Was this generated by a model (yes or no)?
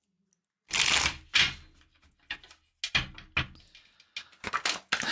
no